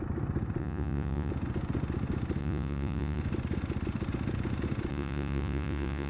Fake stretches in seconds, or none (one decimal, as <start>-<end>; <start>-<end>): 0.6-1.3; 2.4-3.2; 4.9-6.1